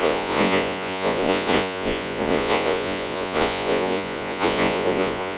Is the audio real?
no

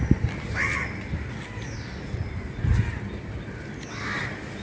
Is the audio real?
yes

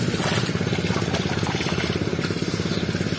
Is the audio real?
yes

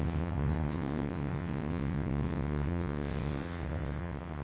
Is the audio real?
no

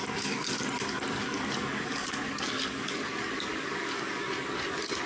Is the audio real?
no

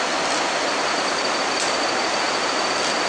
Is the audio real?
yes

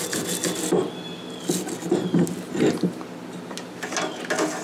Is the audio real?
yes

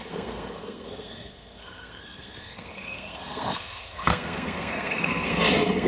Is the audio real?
no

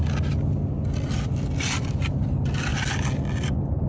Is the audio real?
yes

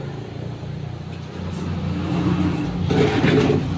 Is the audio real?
yes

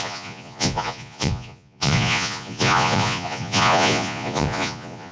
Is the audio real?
no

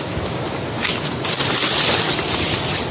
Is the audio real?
yes